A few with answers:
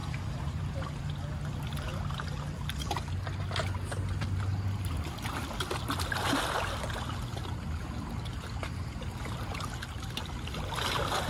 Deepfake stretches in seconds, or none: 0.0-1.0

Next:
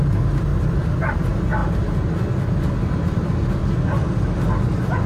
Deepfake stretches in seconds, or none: 0.5-1.2

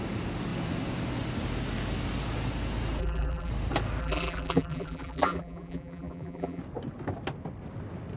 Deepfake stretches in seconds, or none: 3.0-3.5; 4.0-6.6

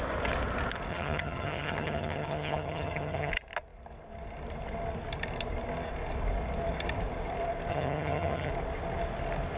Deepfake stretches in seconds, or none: 0.9-3.3; 7.7-8.5